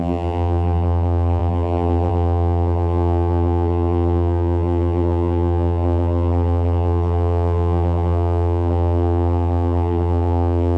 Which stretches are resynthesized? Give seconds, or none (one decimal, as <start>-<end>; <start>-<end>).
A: 0.0-10.8